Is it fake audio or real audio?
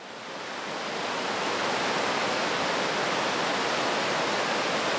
real